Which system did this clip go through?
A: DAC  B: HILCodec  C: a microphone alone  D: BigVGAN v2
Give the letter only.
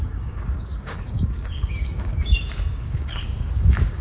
A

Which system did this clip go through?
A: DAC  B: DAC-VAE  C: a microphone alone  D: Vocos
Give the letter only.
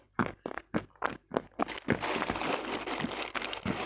C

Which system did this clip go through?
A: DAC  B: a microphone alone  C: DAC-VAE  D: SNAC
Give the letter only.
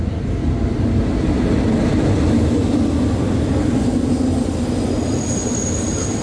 B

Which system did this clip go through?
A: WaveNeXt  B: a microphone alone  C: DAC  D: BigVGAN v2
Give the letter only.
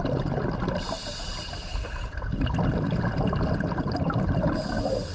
B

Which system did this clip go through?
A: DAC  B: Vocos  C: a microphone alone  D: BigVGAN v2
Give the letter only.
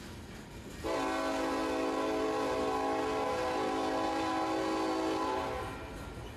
C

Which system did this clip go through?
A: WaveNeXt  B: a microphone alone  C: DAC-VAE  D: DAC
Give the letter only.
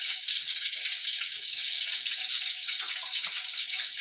D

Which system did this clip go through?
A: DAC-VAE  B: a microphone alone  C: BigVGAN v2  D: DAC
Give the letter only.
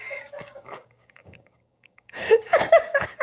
D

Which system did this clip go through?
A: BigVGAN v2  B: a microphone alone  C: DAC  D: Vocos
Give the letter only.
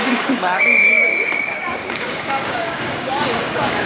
C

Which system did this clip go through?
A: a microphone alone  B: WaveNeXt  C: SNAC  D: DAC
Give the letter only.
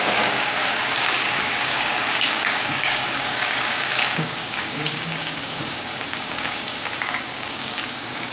D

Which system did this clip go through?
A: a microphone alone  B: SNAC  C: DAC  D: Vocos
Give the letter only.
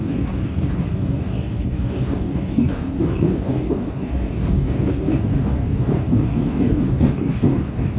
C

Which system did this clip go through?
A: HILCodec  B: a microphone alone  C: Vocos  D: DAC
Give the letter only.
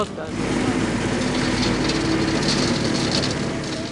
B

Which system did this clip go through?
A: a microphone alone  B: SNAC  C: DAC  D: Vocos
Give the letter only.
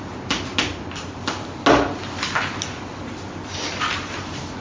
A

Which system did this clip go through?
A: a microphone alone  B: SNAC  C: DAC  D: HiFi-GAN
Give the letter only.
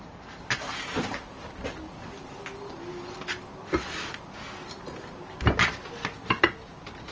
A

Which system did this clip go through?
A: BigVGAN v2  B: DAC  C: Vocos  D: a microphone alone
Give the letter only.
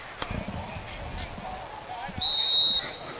D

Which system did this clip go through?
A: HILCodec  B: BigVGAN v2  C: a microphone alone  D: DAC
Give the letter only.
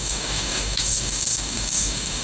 D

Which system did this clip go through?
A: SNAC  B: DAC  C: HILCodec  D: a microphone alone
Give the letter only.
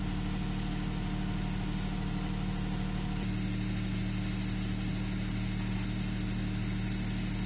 D